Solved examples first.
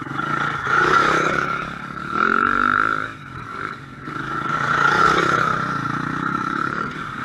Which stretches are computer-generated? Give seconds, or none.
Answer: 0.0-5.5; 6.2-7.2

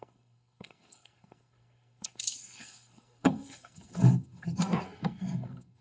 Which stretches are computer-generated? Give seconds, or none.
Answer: 0.0-5.8

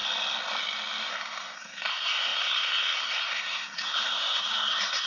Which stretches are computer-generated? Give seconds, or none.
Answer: 1.1-5.1

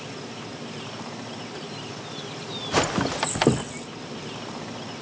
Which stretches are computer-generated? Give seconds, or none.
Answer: 0.5-1.9

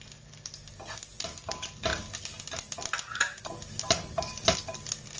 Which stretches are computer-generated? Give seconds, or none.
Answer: none